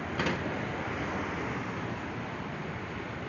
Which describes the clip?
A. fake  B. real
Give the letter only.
B